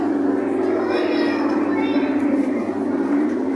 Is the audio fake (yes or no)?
no